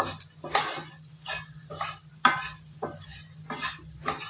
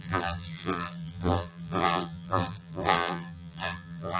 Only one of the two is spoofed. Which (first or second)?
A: second